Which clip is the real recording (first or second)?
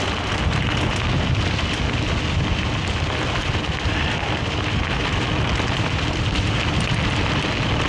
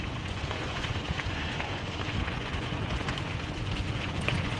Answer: first